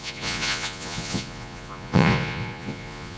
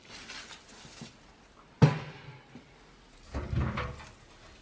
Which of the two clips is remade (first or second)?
first